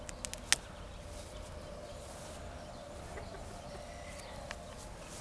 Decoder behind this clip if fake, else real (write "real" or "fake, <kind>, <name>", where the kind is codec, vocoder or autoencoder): real